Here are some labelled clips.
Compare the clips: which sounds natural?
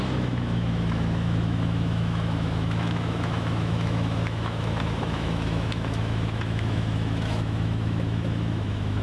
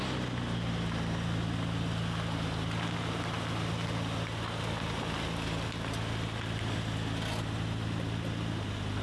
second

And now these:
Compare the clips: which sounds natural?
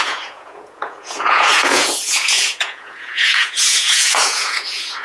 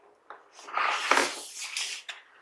second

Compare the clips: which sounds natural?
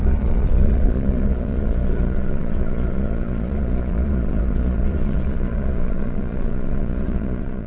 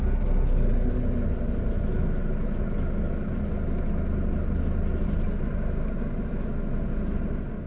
second